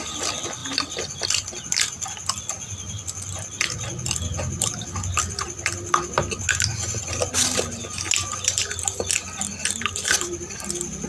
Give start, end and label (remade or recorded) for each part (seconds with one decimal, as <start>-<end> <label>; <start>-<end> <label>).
0.0-11.1 recorded